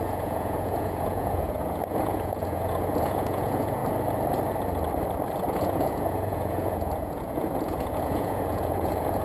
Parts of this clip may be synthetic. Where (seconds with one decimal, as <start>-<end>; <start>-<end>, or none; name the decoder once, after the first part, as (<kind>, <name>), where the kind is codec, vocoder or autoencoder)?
0.0-3.8 (vocoder, Vocos); 5.4-9.2